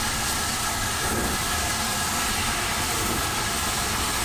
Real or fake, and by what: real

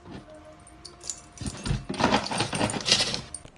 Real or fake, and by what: real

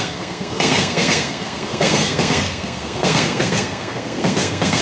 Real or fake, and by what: fake, codec, SNAC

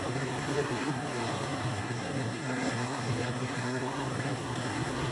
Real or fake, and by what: fake, codec, SNAC